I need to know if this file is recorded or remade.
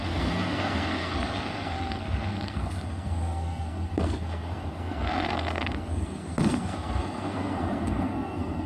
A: remade